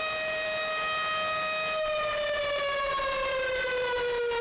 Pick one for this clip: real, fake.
real